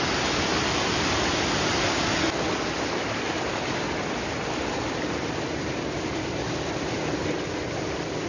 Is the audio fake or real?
real